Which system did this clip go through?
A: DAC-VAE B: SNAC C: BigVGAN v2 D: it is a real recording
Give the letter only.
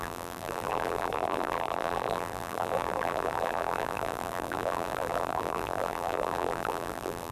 C